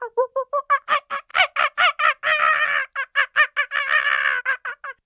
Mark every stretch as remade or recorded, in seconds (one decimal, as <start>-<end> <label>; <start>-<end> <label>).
0.0-5.1 recorded